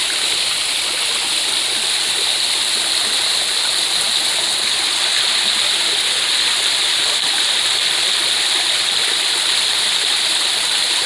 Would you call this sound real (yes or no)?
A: yes